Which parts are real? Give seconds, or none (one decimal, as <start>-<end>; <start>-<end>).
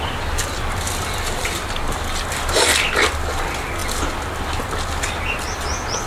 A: 0.0-6.1